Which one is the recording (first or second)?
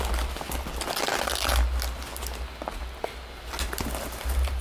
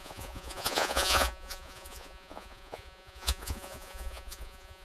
first